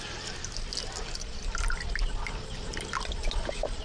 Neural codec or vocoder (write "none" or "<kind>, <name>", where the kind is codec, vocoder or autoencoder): none